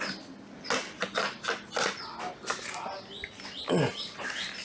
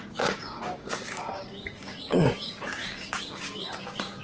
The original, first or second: first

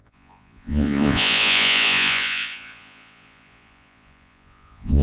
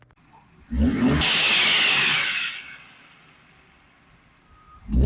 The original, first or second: second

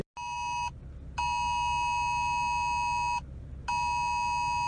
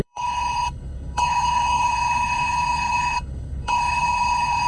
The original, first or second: first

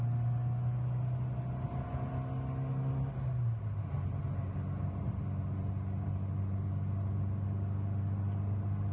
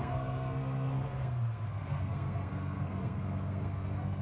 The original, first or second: first